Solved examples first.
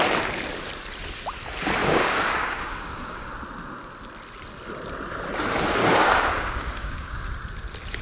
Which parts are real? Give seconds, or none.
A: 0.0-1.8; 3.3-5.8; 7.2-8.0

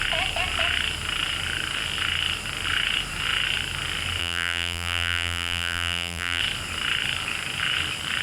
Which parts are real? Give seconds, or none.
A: 0.0-4.2; 6.4-8.2

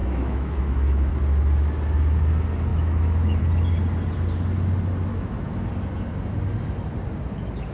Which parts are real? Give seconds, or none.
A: 1.1-2.7; 3.4-5.1; 5.7-7.7

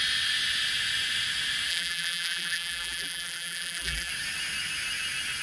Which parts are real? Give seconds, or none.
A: 0.0-1.7; 4.1-5.4

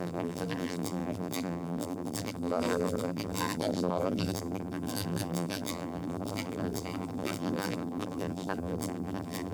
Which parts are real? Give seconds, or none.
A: none